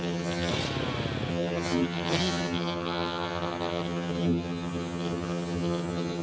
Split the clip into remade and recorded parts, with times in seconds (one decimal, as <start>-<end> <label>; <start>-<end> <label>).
0.0-0.5 remade; 0.5-1.3 recorded; 1.3-6.2 remade

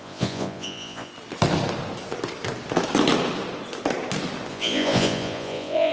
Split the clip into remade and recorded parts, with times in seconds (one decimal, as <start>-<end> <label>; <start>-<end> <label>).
0.0-1.1 remade; 1.1-4.5 recorded; 4.5-5.9 remade

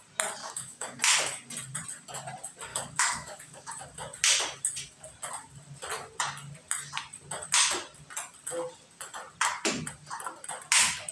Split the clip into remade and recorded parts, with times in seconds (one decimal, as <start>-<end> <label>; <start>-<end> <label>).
0.0-0.4 recorded; 0.4-1.0 remade; 1.0-2.7 recorded; 2.7-3.7 remade; 3.7-11.1 recorded

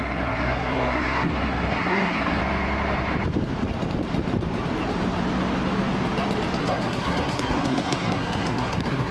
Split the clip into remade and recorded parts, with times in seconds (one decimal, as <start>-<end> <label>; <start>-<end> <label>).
0.0-2.4 remade; 2.4-6.6 recorded; 6.6-9.1 remade

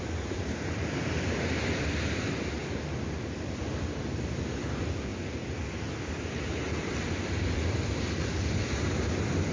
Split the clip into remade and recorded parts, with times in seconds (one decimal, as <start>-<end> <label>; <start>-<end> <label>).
0.0-9.5 recorded

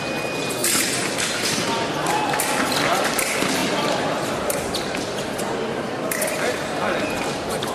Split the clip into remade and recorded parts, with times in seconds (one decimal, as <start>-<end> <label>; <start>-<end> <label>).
0.0-7.7 recorded

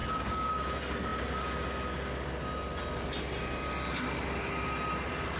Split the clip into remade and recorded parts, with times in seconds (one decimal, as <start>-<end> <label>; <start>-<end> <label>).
0.0-0.5 remade; 0.5-5.4 recorded

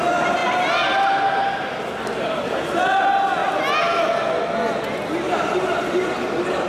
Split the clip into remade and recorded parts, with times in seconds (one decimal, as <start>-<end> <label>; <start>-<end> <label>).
0.0-6.7 recorded